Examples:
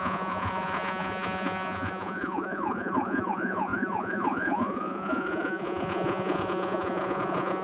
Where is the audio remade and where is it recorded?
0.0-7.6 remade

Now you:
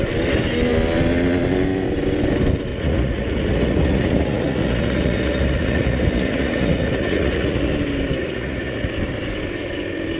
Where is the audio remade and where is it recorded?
0.0-2.7 recorded; 2.7-7.7 remade; 7.7-8.2 recorded; 8.2-8.9 remade; 8.9-10.2 recorded